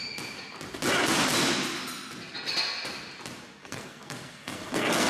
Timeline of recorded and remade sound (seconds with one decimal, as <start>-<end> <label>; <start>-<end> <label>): 0.0-3.6 recorded; 3.6-5.1 remade